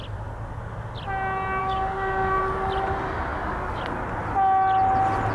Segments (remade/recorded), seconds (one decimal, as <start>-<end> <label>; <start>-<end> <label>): 0.0-1.6 recorded; 1.6-2.4 remade; 2.4-3.3 recorded; 3.3-3.8 remade; 3.8-5.3 recorded